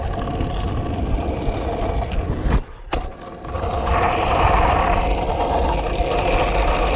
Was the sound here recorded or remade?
recorded